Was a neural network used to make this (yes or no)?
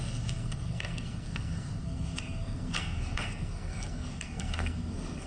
yes